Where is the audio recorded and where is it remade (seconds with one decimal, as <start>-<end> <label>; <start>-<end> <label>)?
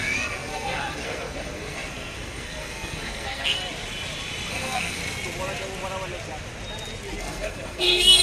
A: 0.0-3.6 remade; 3.6-4.5 recorded; 4.5-5.0 remade; 5.0-7.2 recorded; 7.2-8.2 remade